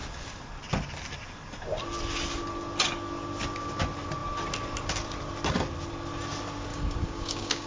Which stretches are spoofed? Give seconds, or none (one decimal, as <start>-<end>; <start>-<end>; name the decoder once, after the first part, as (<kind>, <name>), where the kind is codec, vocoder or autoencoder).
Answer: 6.7-7.7 (codec, DAC)